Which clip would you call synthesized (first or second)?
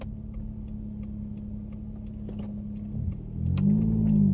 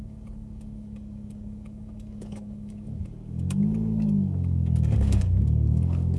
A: second